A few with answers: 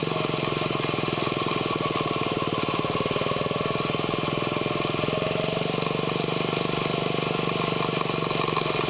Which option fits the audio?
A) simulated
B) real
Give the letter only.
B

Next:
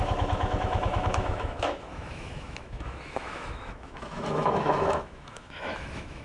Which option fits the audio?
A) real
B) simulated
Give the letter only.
B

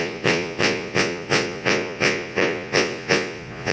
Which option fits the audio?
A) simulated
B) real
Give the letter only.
A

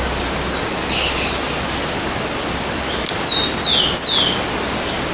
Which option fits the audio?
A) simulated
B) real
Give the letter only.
B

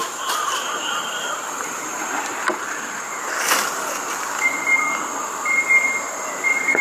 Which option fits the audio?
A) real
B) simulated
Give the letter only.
A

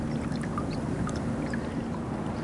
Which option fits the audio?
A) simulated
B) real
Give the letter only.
B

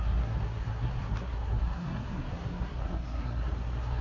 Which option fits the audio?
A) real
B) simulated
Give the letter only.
B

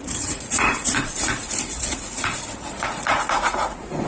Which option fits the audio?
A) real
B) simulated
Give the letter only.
B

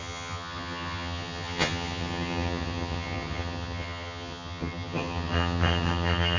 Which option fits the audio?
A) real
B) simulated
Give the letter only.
B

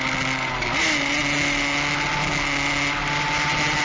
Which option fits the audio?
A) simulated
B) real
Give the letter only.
B